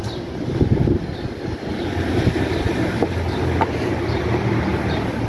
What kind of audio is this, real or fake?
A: fake